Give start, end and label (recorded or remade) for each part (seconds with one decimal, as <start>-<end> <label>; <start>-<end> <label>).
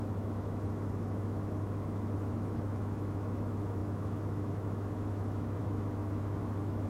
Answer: 0.0-6.9 remade